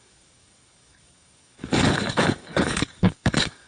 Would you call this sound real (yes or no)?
no